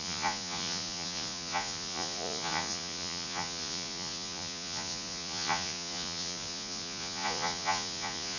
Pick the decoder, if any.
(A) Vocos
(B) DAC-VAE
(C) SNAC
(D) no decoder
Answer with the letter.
A